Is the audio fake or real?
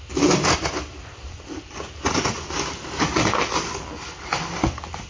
real